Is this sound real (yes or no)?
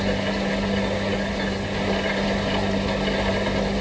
yes